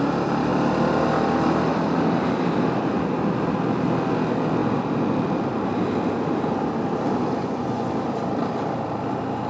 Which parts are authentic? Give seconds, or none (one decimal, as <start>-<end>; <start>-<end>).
0.0-7.4; 7.9-9.5